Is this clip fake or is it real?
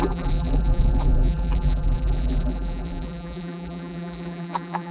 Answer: fake